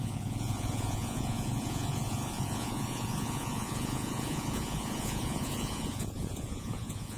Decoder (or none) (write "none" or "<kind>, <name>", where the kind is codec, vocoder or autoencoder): vocoder, Vocos